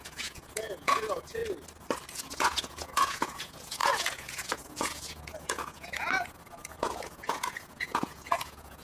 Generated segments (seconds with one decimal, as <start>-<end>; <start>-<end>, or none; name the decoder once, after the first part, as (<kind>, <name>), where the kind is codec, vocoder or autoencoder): 0.0-1.4 (vocoder, Vocos); 2.1-8.8